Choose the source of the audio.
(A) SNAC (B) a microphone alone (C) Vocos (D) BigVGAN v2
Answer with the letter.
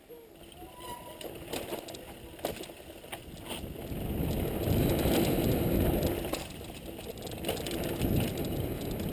B